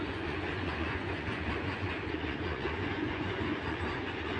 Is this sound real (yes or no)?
no